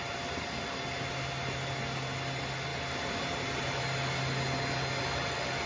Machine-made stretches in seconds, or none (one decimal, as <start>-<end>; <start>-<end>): none